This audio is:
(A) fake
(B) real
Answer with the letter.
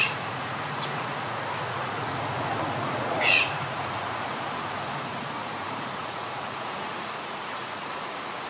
A